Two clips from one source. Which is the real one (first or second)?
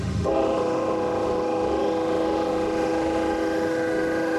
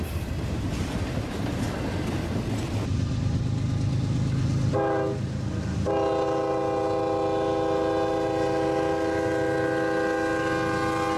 second